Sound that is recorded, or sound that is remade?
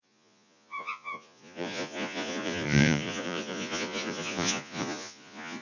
remade